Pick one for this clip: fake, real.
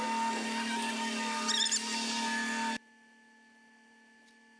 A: real